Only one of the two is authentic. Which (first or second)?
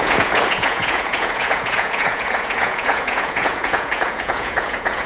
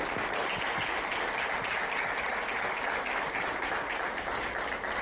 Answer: second